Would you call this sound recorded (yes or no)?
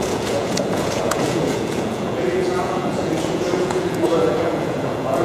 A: no